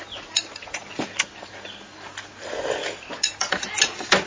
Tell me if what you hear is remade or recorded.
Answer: recorded